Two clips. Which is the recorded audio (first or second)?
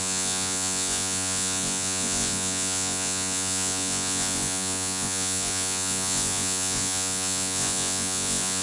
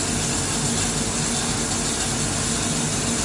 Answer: second